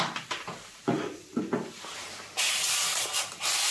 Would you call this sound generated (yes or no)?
no